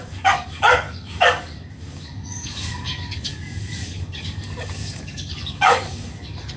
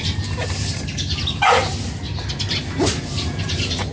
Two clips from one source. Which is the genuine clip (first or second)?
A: second